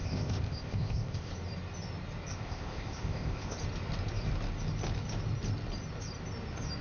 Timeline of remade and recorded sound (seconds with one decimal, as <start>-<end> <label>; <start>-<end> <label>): 0.0-1.3 remade; 1.3-2.3 recorded; 2.3-3.6 remade; 3.6-6.8 recorded